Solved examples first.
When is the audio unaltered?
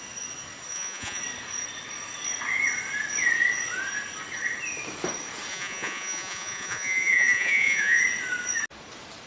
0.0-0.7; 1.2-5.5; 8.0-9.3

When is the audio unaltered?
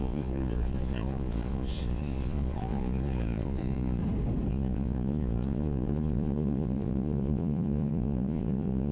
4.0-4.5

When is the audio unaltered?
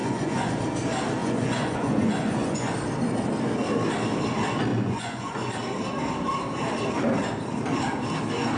0.6-1.2; 2.7-4.7; 5.5-8.6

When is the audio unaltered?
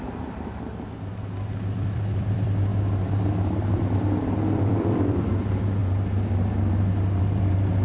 2.7-4.7; 5.8-7.2